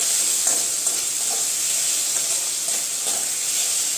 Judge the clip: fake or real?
real